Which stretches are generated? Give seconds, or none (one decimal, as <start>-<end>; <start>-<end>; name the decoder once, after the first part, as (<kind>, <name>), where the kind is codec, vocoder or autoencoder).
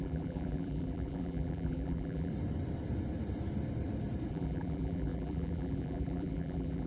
0.0-2.3 (vocoder, BigVGAN v2); 4.3-6.9